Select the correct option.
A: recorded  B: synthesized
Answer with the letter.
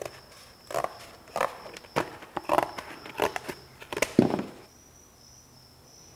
A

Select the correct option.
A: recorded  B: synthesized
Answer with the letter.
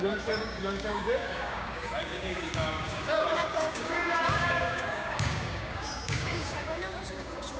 B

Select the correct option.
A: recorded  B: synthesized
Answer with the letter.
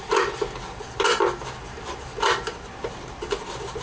A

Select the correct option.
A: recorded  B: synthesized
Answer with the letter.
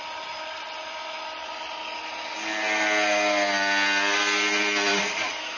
A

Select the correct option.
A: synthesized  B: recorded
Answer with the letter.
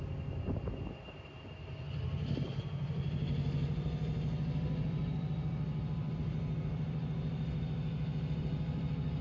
B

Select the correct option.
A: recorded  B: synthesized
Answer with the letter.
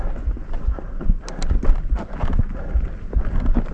A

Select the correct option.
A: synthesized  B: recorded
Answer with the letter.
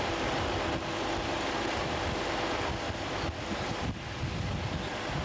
B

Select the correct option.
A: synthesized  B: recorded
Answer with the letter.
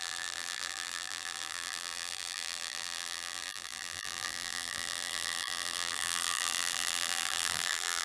A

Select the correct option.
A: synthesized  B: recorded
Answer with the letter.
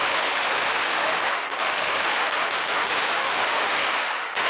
A